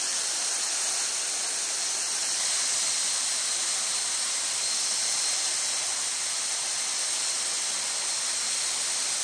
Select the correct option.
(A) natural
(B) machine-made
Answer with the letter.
A